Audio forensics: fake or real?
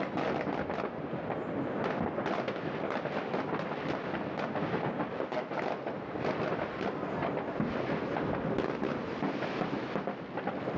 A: real